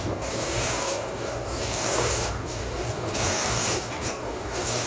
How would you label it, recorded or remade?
remade